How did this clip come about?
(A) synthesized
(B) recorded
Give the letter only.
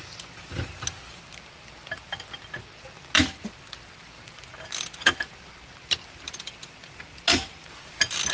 B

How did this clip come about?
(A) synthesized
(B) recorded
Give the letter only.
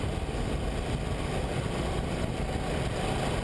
B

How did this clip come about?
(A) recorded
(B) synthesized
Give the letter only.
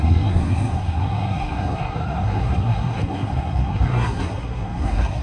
B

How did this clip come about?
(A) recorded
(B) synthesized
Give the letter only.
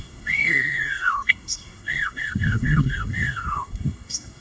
B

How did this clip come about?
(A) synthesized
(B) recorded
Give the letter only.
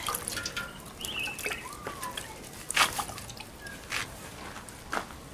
B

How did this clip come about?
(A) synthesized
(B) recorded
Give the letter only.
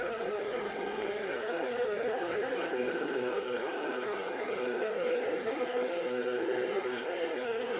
A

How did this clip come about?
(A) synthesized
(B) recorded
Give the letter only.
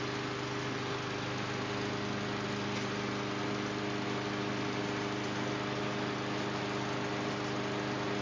B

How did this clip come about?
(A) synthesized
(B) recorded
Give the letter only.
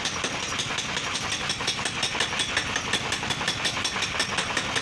B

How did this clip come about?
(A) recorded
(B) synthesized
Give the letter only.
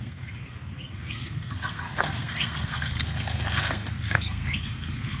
B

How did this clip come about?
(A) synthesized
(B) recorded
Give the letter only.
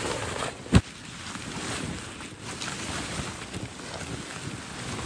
B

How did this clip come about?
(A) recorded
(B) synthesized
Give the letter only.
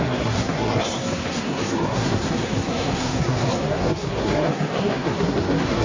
B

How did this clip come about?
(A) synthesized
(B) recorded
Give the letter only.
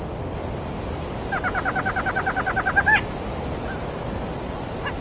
B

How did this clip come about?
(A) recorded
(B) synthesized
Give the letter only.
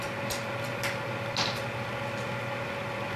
A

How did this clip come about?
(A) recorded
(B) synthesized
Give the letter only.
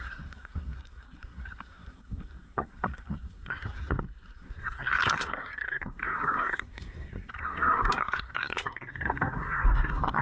B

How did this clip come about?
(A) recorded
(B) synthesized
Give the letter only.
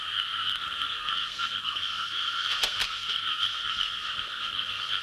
B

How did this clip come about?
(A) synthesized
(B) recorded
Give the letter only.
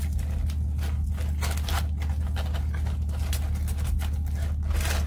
B